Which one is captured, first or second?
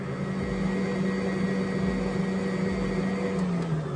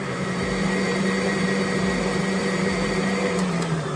first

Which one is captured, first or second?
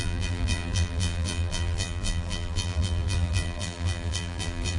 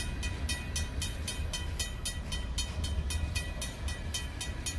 second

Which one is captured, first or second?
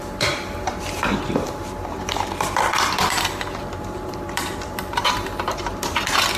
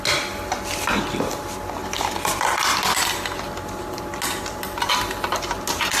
second